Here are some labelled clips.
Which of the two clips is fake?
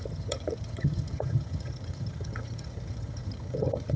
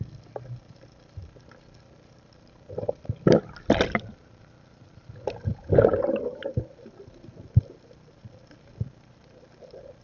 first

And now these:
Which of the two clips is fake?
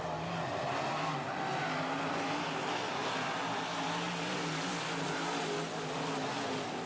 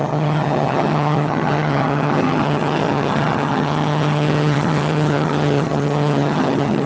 second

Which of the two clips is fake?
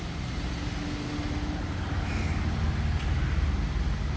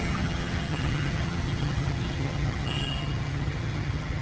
second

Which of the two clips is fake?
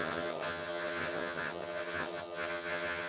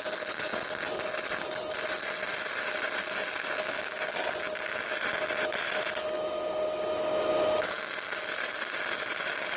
first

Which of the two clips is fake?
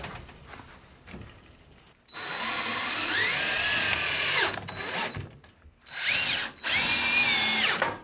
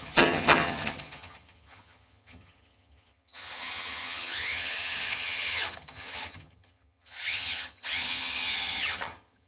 second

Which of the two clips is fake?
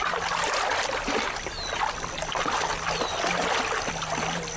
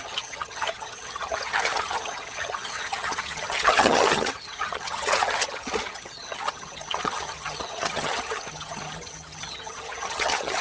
second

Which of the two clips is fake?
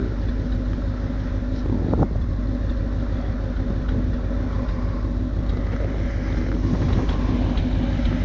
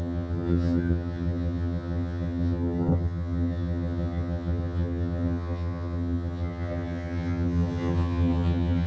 second